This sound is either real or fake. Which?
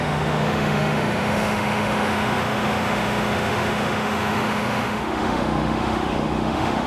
fake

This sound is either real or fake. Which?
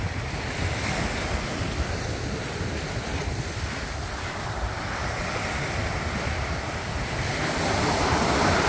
real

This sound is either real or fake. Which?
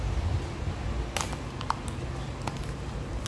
real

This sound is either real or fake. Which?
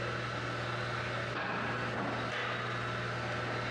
real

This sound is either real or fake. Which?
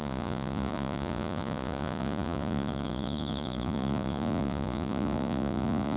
fake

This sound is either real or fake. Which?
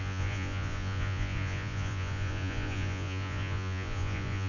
fake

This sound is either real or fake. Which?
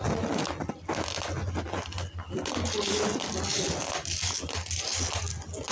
real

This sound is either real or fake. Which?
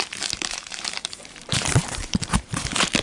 fake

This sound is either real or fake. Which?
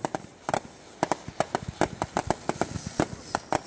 real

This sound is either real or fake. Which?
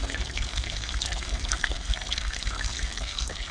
fake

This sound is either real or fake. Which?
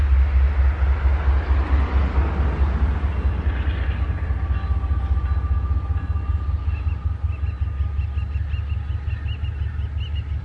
real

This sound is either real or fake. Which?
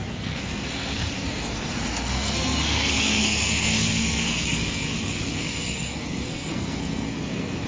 fake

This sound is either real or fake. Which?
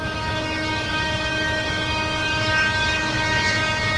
fake